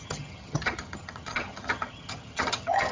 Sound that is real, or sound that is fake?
fake